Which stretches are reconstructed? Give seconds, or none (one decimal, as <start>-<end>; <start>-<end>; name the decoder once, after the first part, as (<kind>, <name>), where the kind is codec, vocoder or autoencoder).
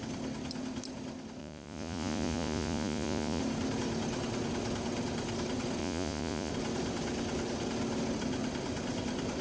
1.4-3.4 (vocoder, Vocos); 5.8-6.5